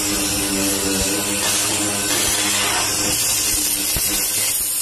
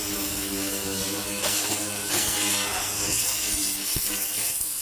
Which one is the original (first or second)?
first